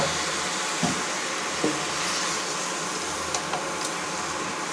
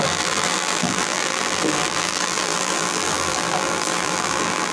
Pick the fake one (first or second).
second